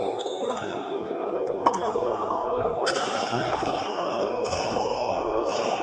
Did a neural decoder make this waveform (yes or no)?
yes